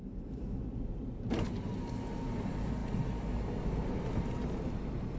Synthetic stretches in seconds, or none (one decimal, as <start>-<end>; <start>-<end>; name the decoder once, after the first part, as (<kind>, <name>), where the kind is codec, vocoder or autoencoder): none

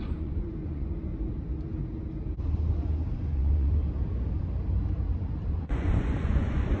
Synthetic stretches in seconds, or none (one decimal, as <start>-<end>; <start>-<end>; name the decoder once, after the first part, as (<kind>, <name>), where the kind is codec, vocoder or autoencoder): 0.0-1.1 (vocoder, Vocos); 3.1-3.8; 5.5-6.8